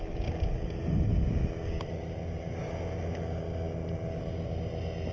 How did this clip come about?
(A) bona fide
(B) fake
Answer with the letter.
A